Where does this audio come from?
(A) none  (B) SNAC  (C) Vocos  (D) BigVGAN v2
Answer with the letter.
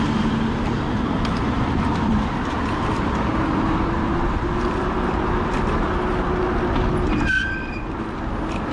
A